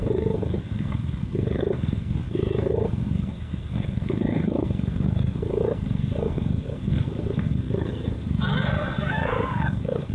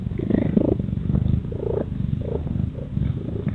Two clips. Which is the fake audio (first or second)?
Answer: first